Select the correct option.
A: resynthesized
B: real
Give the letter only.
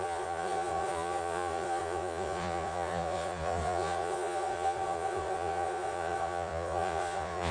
A